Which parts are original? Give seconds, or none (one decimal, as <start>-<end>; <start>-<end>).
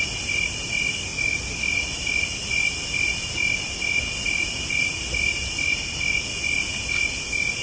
0.0-7.6